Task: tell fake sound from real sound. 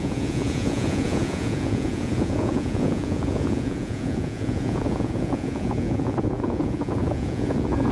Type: fake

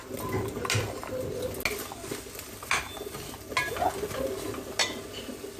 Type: real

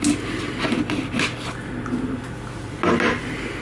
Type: real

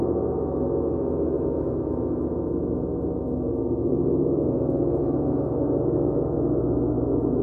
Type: fake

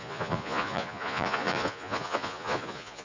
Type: fake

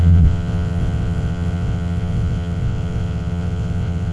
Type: fake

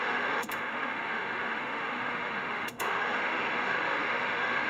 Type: fake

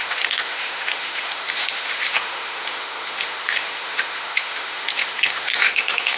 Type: fake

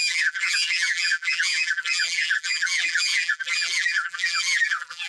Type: fake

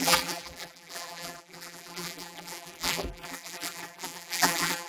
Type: fake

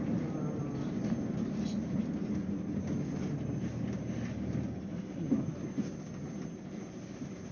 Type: real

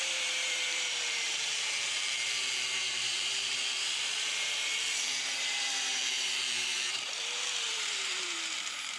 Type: fake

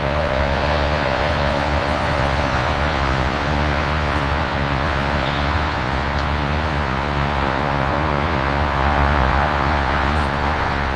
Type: fake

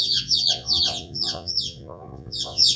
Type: fake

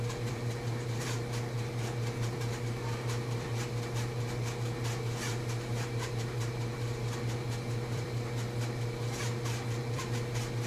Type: fake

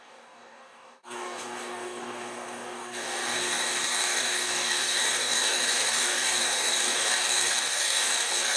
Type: fake